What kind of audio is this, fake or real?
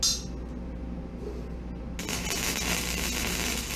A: real